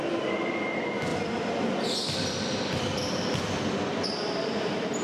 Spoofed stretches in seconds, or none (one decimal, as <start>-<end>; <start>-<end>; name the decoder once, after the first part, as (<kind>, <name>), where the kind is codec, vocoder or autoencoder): none